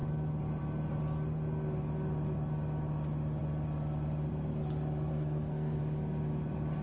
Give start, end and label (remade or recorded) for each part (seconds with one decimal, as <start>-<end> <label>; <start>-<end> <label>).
0.0-5.1 recorded; 5.1-5.8 remade; 5.8-6.8 recorded